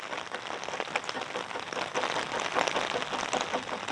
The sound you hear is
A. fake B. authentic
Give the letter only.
B